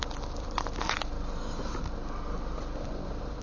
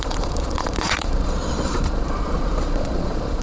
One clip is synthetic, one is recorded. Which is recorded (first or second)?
first